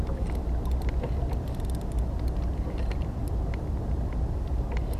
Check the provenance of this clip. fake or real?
real